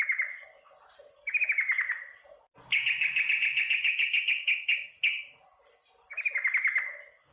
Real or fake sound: real